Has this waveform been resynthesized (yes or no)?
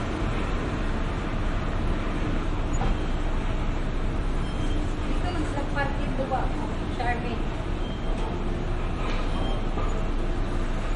no